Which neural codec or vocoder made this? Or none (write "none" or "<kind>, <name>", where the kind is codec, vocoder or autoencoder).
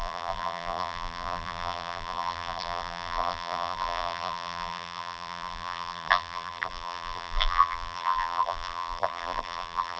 vocoder, BigVGAN v2